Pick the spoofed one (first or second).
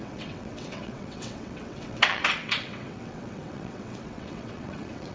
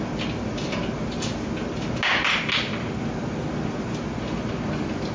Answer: first